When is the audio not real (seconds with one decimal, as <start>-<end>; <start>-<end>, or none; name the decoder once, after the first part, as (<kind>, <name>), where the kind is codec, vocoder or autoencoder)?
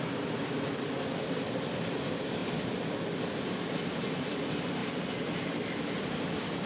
none